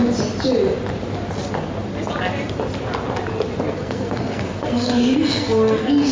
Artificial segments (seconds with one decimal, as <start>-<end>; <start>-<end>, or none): 3.7-6.1